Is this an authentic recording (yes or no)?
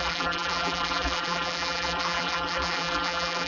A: no